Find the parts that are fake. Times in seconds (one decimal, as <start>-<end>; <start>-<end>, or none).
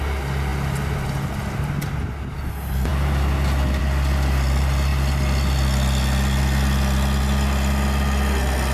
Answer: none